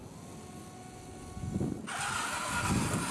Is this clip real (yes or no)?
yes